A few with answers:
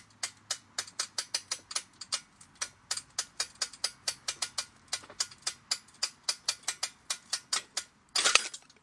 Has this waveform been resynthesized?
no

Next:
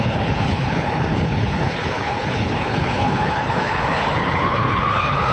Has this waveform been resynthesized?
yes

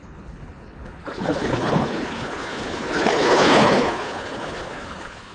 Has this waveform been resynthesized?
yes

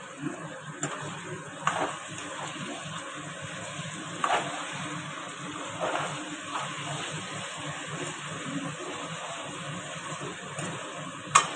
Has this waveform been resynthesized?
no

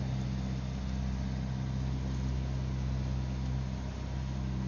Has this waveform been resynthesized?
no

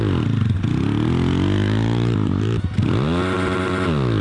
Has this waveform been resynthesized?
no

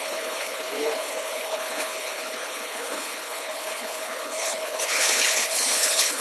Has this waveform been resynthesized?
yes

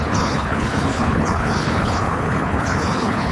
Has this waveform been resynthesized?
yes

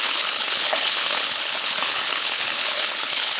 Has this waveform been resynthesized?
yes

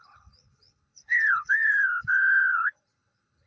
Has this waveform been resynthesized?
yes